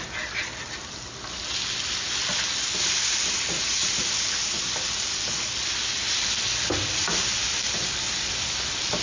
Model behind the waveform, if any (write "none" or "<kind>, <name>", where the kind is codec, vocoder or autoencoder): none